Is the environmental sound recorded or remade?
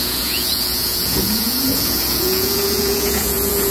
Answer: remade